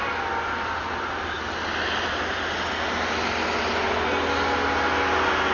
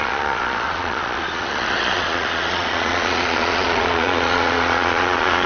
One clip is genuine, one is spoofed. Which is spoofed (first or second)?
second